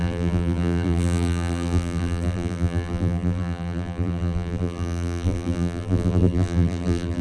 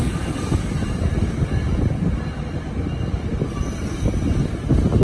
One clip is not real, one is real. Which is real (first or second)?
second